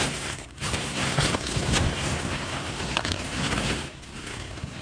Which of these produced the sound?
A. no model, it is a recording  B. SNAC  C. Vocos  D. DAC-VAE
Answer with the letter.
B